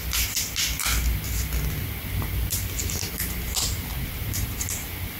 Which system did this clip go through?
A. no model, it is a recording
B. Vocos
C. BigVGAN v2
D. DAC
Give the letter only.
A